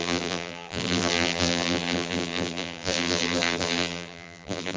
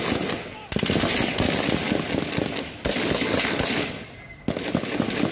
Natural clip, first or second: second